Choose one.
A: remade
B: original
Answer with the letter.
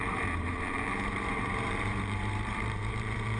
A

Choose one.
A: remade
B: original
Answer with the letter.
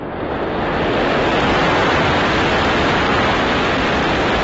B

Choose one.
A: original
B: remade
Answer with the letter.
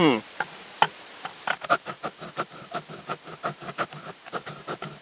B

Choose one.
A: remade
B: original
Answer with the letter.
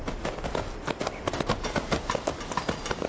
A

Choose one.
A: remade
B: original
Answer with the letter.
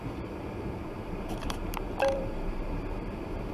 A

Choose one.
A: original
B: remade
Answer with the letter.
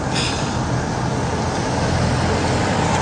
A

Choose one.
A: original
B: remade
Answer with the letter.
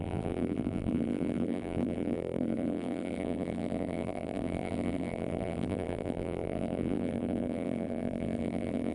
B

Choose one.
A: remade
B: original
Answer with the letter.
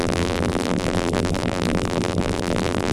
A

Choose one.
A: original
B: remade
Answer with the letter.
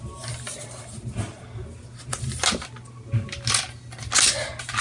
A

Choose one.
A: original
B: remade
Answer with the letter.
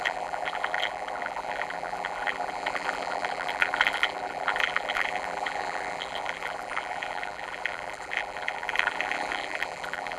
B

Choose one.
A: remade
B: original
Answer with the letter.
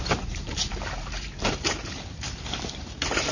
A